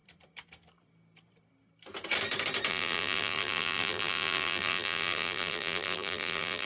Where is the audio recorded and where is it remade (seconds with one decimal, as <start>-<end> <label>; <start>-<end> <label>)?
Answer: 0.0-2.7 recorded; 2.7-6.7 remade